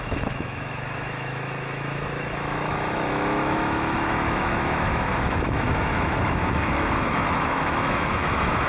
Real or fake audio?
fake